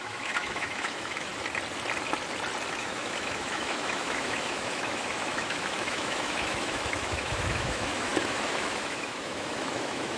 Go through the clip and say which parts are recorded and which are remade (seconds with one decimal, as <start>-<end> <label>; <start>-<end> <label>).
0.0-1.3 remade; 1.3-2.7 recorded; 2.7-10.2 remade